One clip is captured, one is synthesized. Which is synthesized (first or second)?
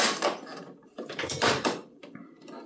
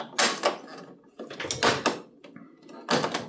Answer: first